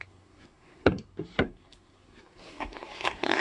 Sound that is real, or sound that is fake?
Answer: fake